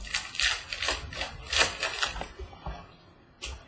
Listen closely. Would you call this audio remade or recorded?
recorded